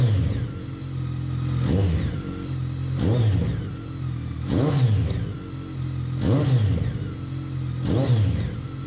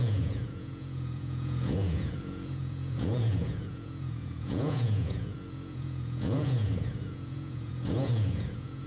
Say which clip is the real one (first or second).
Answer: first